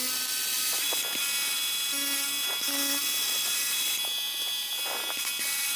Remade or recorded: recorded